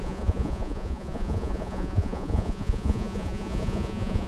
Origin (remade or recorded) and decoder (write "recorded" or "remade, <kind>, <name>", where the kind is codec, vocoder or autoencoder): remade, vocoder, Vocos